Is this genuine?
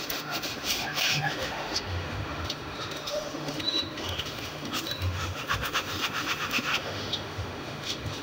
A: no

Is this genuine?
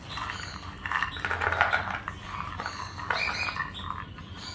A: yes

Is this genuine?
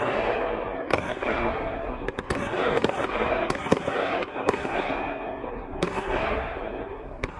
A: no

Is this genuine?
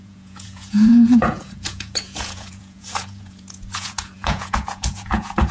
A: no